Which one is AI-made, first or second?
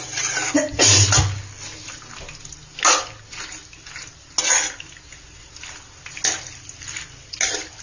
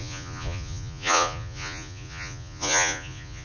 second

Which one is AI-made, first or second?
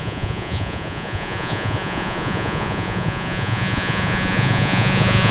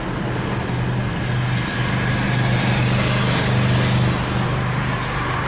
first